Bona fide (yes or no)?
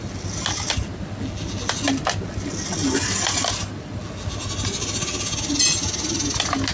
yes